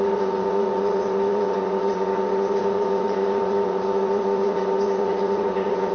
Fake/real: fake